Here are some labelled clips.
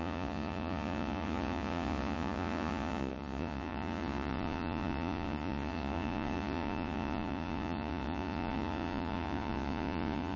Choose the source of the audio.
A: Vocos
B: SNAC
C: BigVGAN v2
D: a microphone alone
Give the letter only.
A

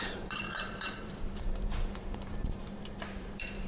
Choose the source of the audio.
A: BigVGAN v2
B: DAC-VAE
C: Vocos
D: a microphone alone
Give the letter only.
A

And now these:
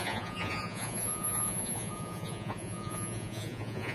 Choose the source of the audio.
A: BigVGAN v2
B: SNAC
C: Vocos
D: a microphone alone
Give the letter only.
C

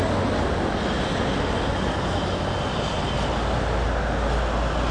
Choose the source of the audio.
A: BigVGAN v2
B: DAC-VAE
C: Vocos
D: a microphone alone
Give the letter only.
D